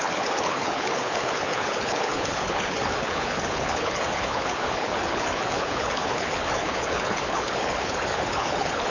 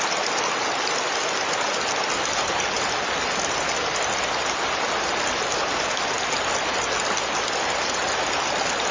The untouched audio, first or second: second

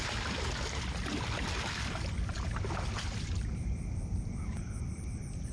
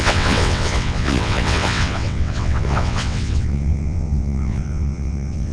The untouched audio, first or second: first